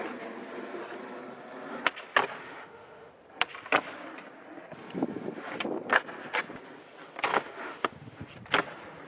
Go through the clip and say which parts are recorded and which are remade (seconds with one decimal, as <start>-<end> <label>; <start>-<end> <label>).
0.0-2.4 recorded; 2.4-3.1 remade; 3.1-7.3 recorded; 7.3-8.2 remade; 8.2-9.1 recorded